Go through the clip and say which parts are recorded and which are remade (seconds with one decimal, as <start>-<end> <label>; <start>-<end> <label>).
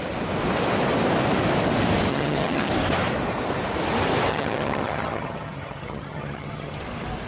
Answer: 0.0-2.1 recorded; 2.1-2.7 remade; 2.7-4.3 recorded; 4.3-6.8 remade; 6.8-7.3 recorded